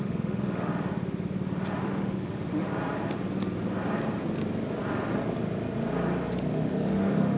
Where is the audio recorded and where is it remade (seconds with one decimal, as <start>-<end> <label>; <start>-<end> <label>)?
0.0-0.7 remade; 0.7-1.8 recorded; 1.8-2.7 remade; 2.7-6.5 recorded; 6.5-7.4 remade